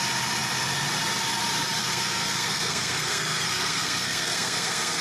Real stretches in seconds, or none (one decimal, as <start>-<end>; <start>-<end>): 0.0-1.8